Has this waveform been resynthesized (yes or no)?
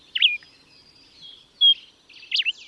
no